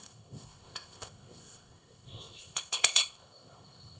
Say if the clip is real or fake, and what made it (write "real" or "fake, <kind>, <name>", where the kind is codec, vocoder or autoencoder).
fake, codec, ZipCodec